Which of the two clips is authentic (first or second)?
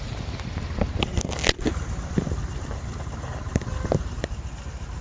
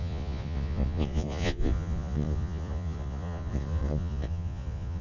first